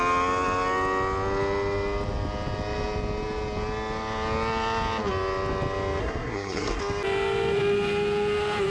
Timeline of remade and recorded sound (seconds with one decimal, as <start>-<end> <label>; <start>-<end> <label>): 0.0-6.0 recorded; 6.0-6.8 remade; 6.8-8.7 recorded